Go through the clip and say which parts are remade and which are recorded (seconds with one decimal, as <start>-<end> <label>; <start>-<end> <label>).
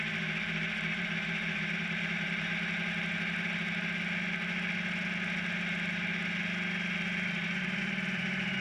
0.0-2.5 remade; 2.5-7.6 recorded; 7.6-8.6 remade